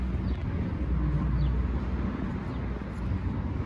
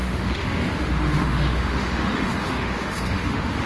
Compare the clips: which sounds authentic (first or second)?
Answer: first